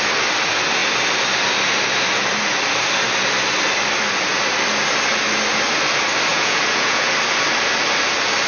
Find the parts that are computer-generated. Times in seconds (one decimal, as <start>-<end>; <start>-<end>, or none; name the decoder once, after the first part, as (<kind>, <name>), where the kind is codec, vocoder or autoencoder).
6.3-7.1 (vocoder, Vocos)